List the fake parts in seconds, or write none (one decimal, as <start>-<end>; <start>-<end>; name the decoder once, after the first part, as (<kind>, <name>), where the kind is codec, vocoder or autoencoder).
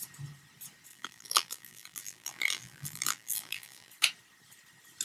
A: 0.9-3.9 (vocoder, BigVGAN v2)